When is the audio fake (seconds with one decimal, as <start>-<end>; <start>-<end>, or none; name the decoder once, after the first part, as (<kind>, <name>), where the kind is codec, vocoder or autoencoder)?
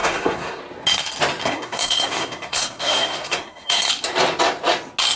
0.0-0.6 (codec, SNAC); 1.4-3.9